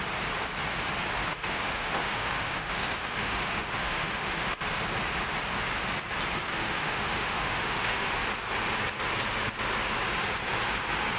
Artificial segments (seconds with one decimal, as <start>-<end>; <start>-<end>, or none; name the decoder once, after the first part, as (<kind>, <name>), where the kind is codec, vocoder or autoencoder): 1.2-4.6 (autoencoder, DAC-VAE); 6.5-8.1